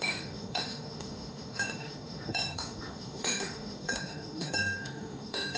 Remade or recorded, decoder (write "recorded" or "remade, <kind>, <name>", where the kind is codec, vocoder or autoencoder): remade, autoencoder, DAC-VAE